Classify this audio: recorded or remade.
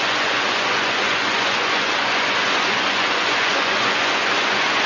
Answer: remade